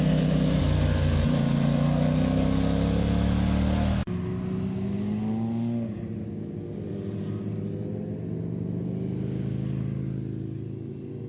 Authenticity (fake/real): real